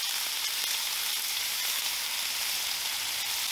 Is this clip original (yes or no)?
yes